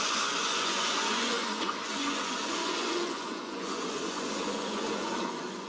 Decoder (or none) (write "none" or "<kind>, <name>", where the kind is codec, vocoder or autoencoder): vocoder, Vocos